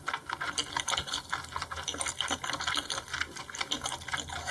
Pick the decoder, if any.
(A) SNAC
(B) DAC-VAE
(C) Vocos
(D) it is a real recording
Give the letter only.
D